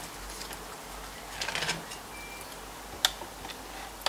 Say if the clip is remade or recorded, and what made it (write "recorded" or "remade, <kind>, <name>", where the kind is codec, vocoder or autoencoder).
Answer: recorded